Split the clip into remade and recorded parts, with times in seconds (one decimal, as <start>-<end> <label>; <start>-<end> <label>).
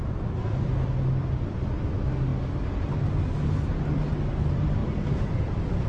0.0-2.3 remade; 2.3-4.3 recorded; 4.3-4.8 remade; 4.8-5.3 recorded; 5.3-5.9 remade